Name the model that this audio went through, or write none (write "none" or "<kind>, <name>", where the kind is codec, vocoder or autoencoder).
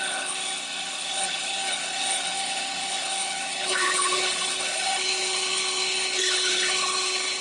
codec, HILCodec